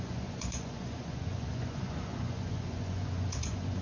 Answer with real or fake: fake